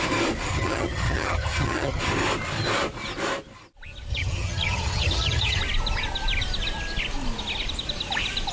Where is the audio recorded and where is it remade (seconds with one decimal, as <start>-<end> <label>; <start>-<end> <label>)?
0.0-0.5 recorded; 0.5-2.0 remade; 2.0-4.1 recorded; 4.1-5.6 remade; 5.6-8.5 recorded

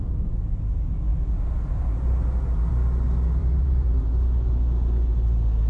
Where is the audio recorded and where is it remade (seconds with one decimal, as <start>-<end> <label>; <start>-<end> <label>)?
0.0-3.4 recorded; 3.4-4.1 remade; 4.1-5.7 recorded